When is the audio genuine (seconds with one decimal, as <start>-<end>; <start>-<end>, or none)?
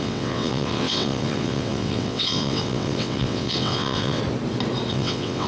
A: 4.2-4.9